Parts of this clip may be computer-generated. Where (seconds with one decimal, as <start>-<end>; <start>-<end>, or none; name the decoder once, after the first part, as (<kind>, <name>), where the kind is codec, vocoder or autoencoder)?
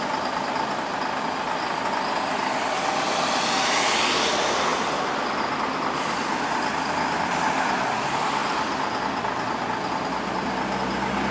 4.7-5.4 (vocoder, BigVGAN v2); 8.4-10.0